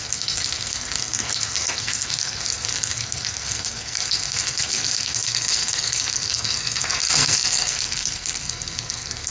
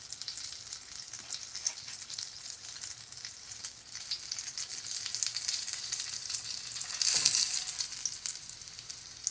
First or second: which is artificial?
first